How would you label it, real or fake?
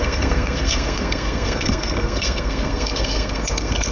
fake